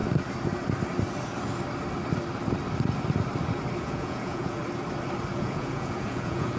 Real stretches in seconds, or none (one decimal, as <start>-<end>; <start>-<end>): 0.0-3.8; 4.6-5.3